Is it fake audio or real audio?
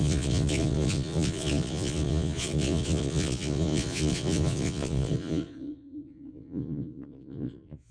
fake